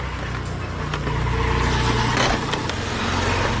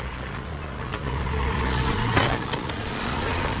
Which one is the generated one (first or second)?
second